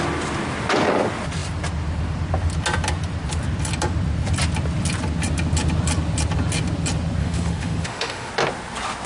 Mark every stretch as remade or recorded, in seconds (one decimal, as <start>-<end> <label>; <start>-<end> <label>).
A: 0.0-7.2 recorded; 7.2-8.3 remade; 8.3-9.1 recorded